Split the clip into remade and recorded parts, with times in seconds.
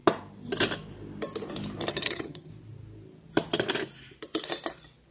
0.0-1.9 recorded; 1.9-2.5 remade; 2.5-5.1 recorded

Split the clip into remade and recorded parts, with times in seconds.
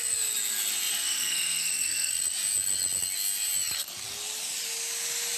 0.0-0.9 recorded; 0.9-2.1 remade; 2.1-5.4 recorded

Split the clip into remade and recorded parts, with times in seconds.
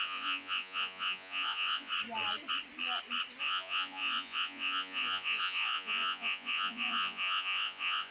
0.0-1.9 remade; 1.9-3.4 recorded; 3.4-8.1 remade